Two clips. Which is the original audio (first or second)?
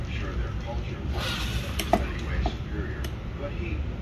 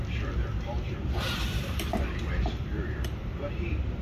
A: first